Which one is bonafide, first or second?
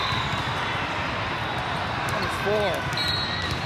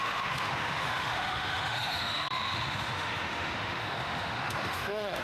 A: first